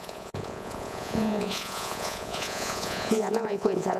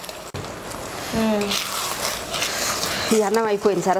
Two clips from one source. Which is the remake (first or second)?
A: first